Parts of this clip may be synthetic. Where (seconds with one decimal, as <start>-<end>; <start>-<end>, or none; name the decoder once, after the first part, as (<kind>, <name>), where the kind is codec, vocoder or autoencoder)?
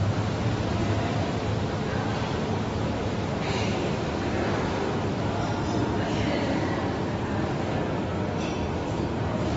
0.0-3.7 (vocoder, BigVGAN v2); 4.6-8.1; 8.8-9.6